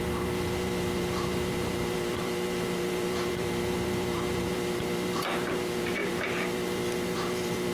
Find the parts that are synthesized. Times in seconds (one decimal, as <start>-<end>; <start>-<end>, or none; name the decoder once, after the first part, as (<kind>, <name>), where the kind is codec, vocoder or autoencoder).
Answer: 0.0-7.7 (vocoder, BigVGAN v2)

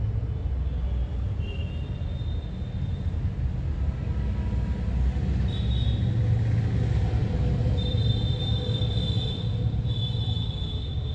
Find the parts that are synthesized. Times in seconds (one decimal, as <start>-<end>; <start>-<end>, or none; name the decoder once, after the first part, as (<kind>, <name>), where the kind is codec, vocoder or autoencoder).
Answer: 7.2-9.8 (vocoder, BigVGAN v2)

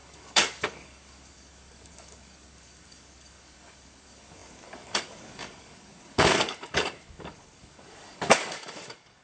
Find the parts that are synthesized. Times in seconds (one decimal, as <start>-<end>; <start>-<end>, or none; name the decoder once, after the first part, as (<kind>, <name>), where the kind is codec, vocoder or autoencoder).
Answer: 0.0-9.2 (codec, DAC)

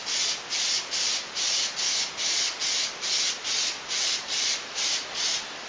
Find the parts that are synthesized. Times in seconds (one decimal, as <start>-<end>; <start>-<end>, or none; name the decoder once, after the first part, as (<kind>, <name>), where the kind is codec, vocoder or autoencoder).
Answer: none

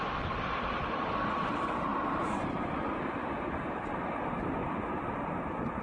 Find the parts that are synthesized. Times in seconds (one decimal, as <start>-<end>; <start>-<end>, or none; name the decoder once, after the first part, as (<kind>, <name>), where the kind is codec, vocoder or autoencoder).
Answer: 0.0-1.9 (vocoder, BigVGAN v2); 4.1-5.8

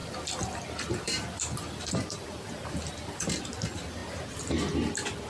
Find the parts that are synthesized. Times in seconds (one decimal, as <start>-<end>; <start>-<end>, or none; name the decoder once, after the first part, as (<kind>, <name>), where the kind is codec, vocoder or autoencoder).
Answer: 0.0-3.2 (vocoder, BigVGAN v2)